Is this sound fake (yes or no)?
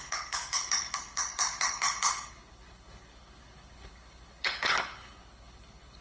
yes